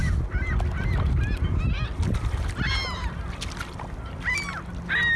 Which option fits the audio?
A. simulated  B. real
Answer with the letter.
B